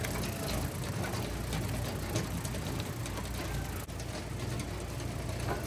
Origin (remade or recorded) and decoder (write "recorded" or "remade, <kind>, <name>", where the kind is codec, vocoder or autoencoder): recorded